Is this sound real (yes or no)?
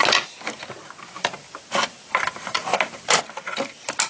yes